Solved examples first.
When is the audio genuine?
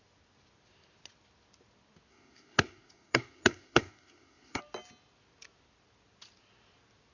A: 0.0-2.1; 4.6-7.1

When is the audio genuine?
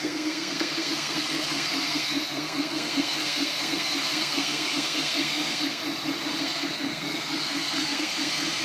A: 5.8-6.4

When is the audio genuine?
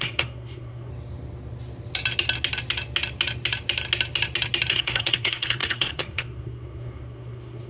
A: 0.9-4.7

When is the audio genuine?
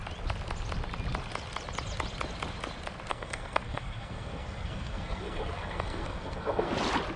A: 0.0-3.1; 6.7-7.2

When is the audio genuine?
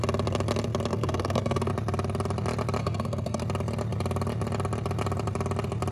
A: 0.0-0.9; 1.7-2.8; 3.4-5.9